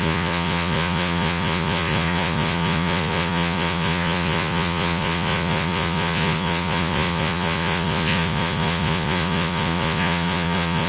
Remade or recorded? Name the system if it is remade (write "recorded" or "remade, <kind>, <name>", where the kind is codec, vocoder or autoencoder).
remade, vocoder, Vocos